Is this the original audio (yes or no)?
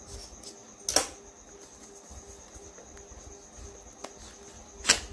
yes